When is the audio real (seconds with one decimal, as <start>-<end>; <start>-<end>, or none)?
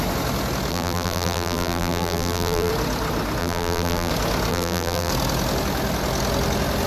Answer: 0.0-0.7; 2.7-3.4; 4.1-4.5; 5.1-6.9